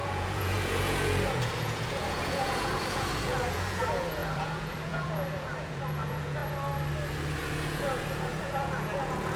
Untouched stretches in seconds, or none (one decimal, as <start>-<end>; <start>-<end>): 6.4-7.4